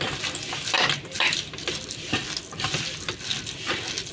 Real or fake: real